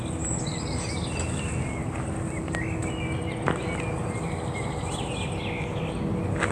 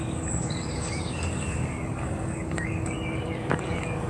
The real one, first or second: first